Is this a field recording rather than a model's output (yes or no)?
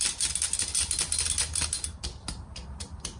yes